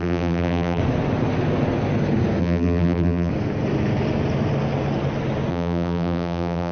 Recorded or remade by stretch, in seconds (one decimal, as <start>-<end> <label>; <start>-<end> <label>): 0.0-0.8 remade; 0.8-2.4 recorded; 2.4-3.3 remade; 3.3-5.5 recorded; 5.5-6.7 remade